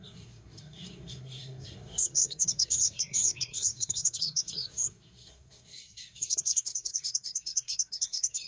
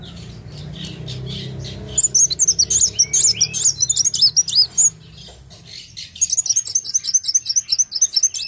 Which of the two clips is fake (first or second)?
first